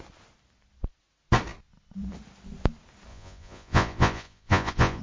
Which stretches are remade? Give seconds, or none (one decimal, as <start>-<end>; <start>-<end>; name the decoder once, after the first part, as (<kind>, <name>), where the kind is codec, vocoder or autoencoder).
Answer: 3.1-5.0 (vocoder, Vocos)